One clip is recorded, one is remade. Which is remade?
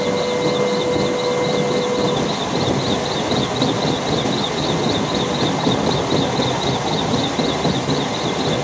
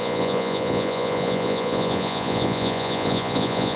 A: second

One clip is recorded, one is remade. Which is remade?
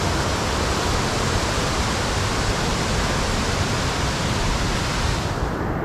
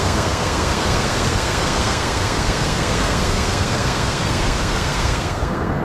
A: second